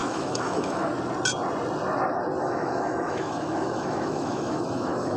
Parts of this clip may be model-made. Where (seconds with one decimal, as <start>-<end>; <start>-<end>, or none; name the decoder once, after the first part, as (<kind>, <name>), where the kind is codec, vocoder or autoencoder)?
0.0-0.9 (autoencoder, DAC-VAE); 2.4-5.2